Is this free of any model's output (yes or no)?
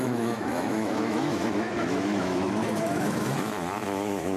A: no